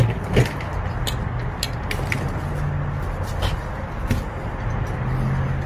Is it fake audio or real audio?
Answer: real